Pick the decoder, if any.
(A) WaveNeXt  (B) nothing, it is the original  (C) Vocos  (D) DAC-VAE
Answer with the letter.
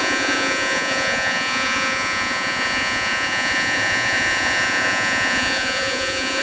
C